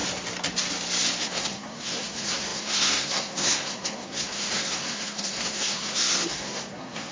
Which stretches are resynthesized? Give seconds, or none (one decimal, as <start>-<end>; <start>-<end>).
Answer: 1.2-7.1